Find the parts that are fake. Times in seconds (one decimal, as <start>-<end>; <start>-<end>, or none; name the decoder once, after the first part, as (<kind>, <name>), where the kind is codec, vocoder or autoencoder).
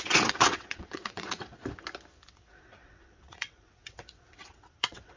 0.0-1.6 (vocoder, WaveNeXt); 2.5-5.2